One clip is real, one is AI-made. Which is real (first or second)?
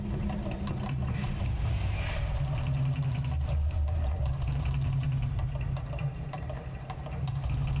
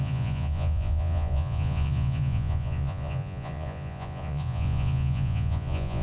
first